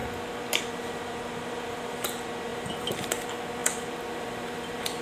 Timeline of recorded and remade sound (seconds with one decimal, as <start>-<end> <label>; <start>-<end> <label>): 0.0-0.6 recorded; 0.6-3.6 remade; 3.6-4.1 recorded; 4.1-5.0 remade